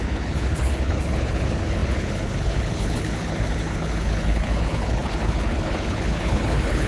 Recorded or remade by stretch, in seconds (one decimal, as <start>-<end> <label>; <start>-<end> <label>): 0.0-6.9 remade